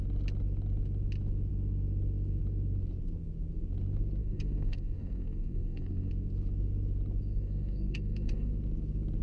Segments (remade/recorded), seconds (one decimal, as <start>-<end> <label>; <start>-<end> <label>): 0.0-4.2 recorded; 4.2-6.1 remade; 6.1-7.3 recorded; 7.3-8.5 remade; 8.5-9.2 recorded